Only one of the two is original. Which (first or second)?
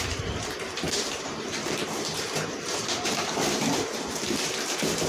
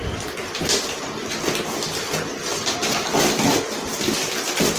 second